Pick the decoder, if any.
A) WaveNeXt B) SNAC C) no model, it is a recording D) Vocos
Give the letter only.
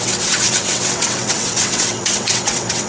A